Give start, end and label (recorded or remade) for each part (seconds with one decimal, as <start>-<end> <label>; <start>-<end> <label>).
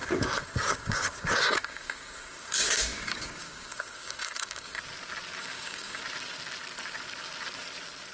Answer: 0.0-4.8 remade; 4.8-5.4 recorded; 5.4-6.0 remade; 6.0-8.1 recorded